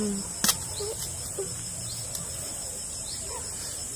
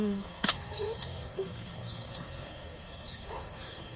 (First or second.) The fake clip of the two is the second